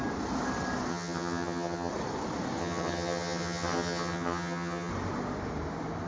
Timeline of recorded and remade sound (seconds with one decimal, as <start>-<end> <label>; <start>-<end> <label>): 0.0-0.9 recorded; 0.9-1.9 remade; 1.9-2.6 recorded; 2.6-4.9 remade; 4.9-6.1 recorded